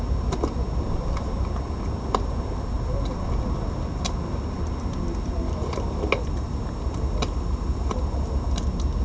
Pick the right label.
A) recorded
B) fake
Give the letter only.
A